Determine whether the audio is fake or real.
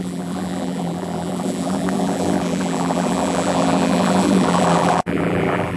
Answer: fake